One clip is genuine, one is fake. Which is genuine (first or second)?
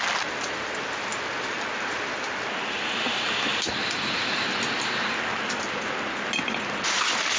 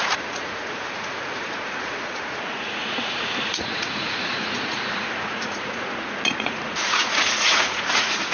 first